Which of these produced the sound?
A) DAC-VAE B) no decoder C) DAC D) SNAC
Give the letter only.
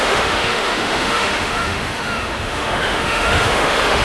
A